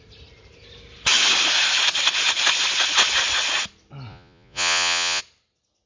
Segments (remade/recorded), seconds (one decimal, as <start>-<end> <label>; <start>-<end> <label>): 0.0-4.1 recorded; 4.1-5.2 remade; 5.2-5.9 recorded